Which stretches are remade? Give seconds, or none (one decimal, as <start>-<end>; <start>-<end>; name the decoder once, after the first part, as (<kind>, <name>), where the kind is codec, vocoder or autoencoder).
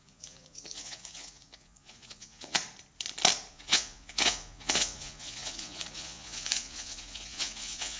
0.0-2.6 (vocoder, Vocos); 3.5-8.0